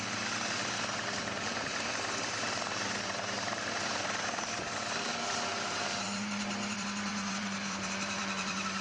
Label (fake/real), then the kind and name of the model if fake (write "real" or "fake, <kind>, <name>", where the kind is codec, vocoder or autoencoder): fake, vocoder, BigVGAN v2